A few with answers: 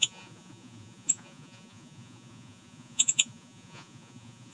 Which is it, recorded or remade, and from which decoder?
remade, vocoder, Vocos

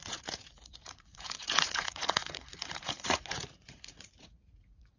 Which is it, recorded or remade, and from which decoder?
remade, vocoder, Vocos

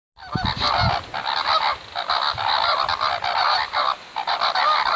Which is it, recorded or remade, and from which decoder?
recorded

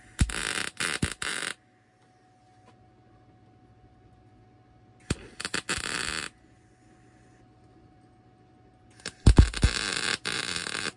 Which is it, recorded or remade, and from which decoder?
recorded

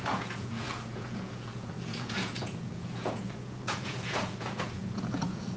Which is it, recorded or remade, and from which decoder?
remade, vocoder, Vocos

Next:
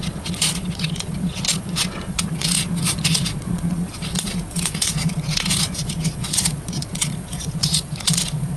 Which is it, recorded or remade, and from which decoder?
remade, vocoder, Vocos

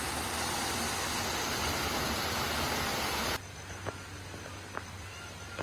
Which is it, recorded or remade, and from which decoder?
recorded